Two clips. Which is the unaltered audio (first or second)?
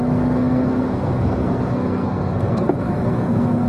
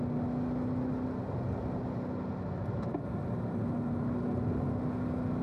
second